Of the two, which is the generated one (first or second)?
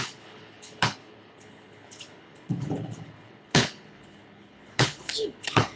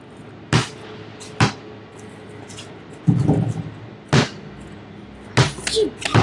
first